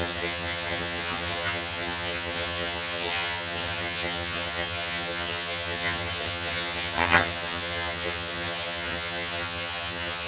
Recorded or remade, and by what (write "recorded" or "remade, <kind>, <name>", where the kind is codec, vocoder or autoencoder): remade, vocoder, HiFi-GAN